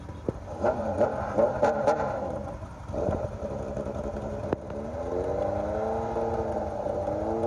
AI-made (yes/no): no